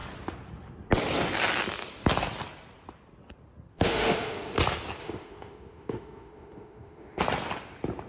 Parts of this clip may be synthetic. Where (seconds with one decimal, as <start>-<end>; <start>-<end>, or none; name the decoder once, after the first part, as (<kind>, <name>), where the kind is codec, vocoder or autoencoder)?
3.7-4.6 (autoencoder, DAC-VAE); 5.0-7.2